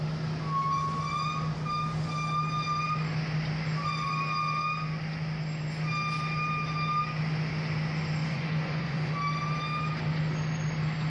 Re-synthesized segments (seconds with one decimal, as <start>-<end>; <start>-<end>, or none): 8.2-9.1